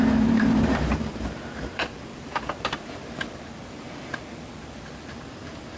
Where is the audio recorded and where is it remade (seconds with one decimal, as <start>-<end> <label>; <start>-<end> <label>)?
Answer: 0.0-2.1 remade; 2.1-5.1 recorded; 5.1-5.8 remade